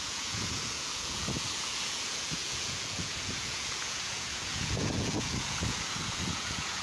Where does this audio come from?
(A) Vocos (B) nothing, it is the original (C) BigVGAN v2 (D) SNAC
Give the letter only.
A